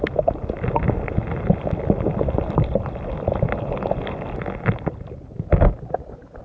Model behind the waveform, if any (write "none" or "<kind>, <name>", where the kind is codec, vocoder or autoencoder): none